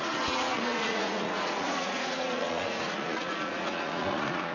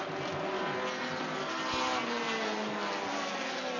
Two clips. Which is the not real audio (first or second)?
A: first